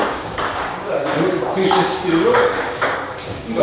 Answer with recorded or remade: remade